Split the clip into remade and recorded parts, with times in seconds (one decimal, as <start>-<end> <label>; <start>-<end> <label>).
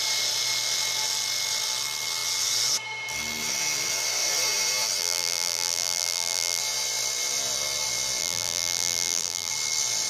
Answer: 0.0-5.0 recorded; 5.0-6.6 remade; 6.6-8.2 recorded; 8.2-9.5 remade; 9.5-10.1 recorded